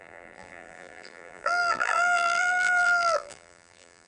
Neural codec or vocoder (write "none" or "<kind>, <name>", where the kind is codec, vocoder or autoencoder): vocoder, BigVGAN v2